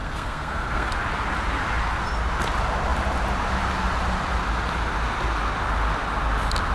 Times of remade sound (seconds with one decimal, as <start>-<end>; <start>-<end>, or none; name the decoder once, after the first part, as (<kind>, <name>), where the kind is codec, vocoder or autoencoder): 0.0-0.9 (codec, SNAC)